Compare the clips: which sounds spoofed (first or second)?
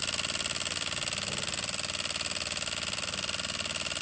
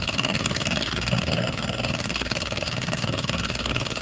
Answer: second